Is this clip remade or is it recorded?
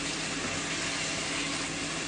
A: recorded